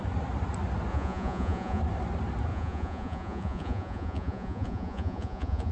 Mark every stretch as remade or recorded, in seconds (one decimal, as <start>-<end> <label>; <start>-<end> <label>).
0.0-0.9 recorded; 0.9-1.8 remade; 1.8-2.5 recorded; 2.5-5.7 remade